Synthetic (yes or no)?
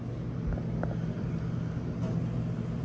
no